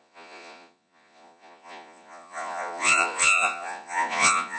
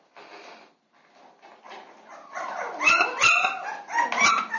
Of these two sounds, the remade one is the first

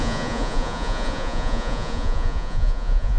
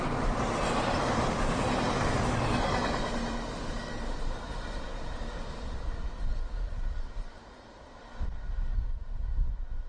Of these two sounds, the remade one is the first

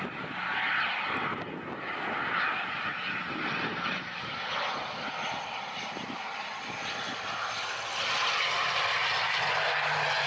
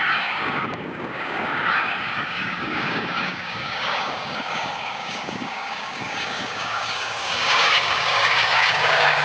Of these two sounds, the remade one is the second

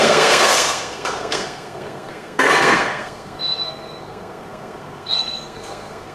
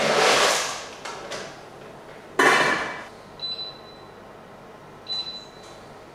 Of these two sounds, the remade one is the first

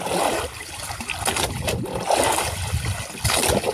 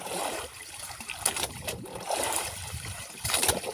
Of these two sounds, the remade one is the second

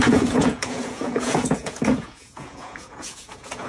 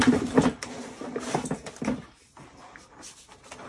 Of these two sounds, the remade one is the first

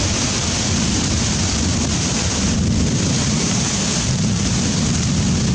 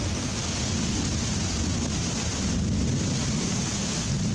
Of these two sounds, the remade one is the first